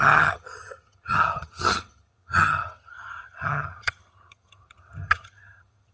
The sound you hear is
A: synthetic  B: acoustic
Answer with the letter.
A